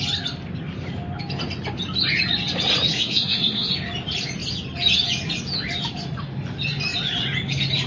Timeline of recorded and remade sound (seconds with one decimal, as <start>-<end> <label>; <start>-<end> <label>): 0.0-2.9 recorded; 2.9-3.7 remade; 3.7-7.9 recorded